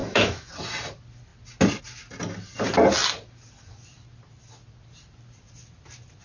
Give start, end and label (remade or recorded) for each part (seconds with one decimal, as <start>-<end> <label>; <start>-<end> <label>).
0.0-0.5 remade; 0.5-6.2 recorded